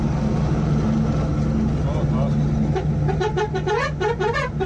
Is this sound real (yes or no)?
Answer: yes